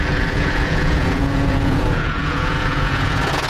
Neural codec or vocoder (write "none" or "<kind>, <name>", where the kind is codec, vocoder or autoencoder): vocoder, Vocos